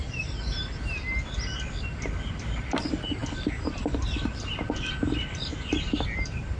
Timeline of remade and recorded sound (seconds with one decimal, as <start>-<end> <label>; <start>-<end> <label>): 0.0-6.6 recorded